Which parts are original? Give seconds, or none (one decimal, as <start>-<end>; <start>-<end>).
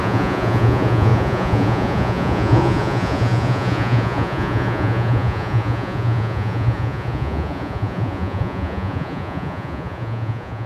none